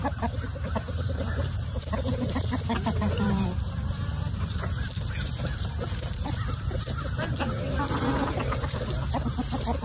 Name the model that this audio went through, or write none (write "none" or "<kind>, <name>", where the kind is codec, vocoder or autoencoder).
vocoder, BigVGAN v2